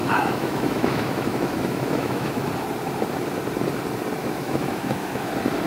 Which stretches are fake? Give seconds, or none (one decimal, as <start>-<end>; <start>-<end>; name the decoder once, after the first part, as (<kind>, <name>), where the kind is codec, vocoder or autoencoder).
0.0-2.4 (autoencoder, DAC-VAE); 4.2-5.3